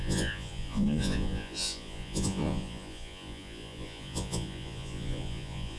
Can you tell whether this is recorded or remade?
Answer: remade